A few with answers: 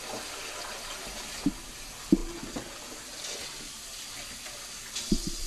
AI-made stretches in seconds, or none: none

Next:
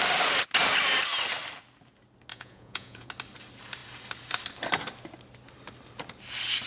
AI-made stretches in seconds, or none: 2.3-3.1 (vocoder, Vocos)

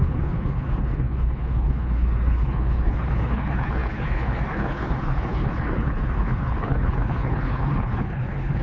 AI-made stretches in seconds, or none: 0.0-8.6 (codec, HILCodec)

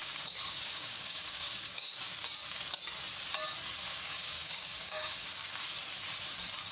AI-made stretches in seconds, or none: 0.0-2.0 (codec, DAC); 3.9-5.6

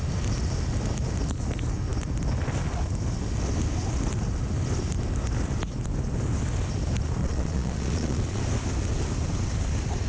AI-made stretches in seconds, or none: 7.2-8.4 (vocoder, Vocos)

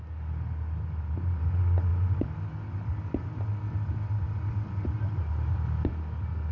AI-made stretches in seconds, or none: none